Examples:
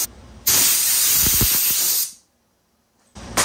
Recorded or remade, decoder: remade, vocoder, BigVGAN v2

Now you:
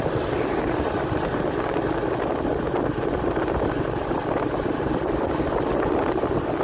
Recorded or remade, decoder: recorded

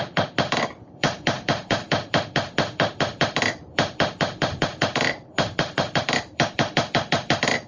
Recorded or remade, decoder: remade, vocoder, BigVGAN v2